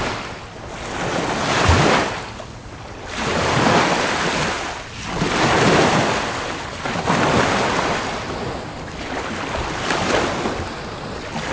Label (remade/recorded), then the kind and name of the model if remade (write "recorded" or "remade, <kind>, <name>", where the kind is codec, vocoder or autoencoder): recorded